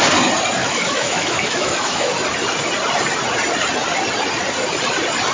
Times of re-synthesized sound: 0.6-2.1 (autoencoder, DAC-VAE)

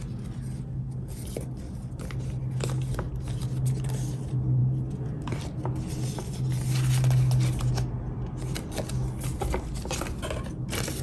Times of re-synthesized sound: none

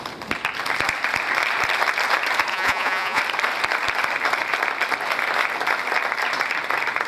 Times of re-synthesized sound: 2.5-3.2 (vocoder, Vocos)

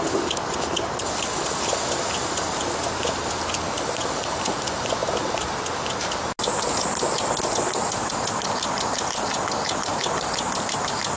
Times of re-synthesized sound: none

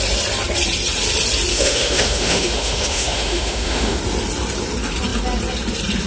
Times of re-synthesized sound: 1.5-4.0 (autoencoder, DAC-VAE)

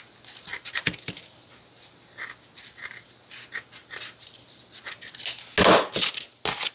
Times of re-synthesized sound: 0.5-1.6 (vocoder, BigVGAN v2); 3.8-4.6

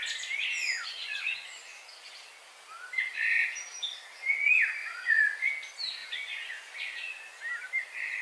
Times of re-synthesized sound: 0.6-2.1 (vocoder, Vocos); 4.8-5.5; 6.0-7.4

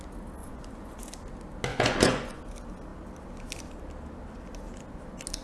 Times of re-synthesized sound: 0.4-1.0 (vocoder, Vocos); 1.7-2.4